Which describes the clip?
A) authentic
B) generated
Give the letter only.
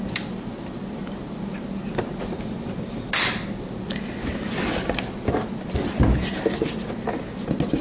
A